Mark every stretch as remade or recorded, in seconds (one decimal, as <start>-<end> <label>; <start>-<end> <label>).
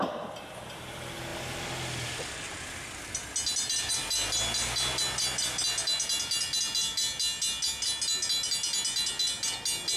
0.0-10.0 recorded